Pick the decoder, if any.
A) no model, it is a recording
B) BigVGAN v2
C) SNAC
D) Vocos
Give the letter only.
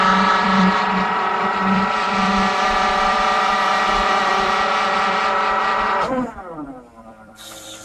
B